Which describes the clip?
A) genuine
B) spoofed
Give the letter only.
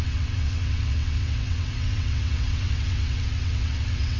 B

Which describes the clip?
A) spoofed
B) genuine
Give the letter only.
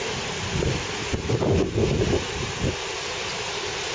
B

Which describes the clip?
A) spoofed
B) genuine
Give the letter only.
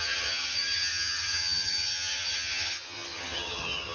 A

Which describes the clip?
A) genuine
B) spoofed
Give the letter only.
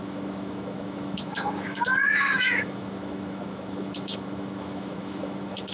B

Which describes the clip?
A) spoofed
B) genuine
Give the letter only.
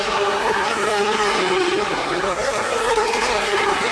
A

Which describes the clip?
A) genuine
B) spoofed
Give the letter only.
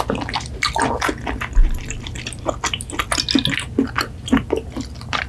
A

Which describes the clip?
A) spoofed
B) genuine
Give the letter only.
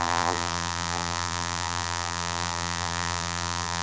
A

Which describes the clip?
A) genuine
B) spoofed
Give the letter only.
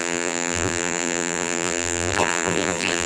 B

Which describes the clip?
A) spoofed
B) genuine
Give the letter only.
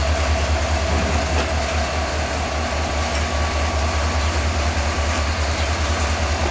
B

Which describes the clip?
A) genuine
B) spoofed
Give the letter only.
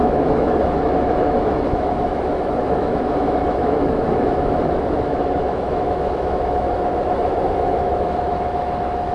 B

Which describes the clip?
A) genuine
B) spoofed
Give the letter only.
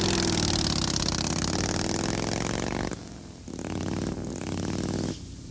A